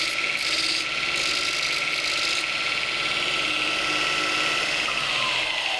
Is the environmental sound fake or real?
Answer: real